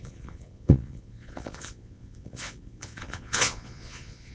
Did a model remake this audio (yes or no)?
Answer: yes